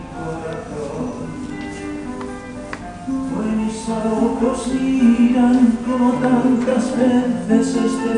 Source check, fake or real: real